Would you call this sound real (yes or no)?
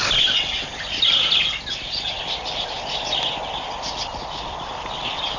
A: yes